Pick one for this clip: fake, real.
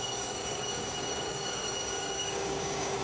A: fake